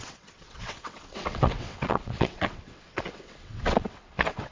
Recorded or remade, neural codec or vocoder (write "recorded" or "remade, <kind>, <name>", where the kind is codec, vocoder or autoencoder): remade, vocoder, WaveNeXt